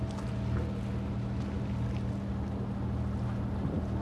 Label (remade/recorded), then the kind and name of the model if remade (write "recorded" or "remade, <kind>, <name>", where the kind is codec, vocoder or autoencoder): recorded